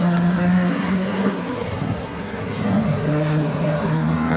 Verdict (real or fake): fake